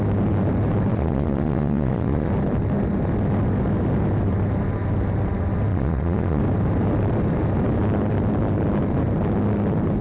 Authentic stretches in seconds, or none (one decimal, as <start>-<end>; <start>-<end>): 0.0-0.9; 2.3-5.7; 6.4-10.0